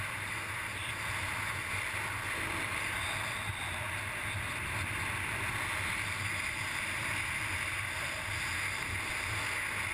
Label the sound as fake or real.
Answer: real